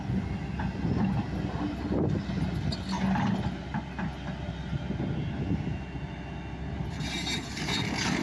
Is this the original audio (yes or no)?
yes